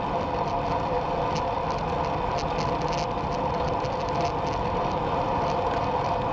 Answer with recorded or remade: recorded